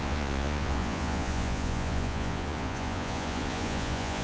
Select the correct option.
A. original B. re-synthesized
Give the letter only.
B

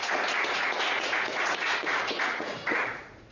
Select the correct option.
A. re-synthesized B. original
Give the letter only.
A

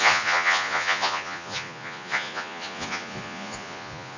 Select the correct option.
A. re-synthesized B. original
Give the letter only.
A